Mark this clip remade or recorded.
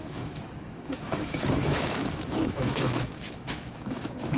remade